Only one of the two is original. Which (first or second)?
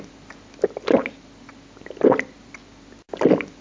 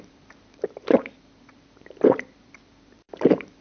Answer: first